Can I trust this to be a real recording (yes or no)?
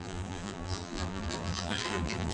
no